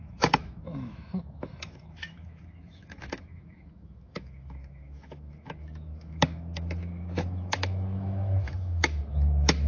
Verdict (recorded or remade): remade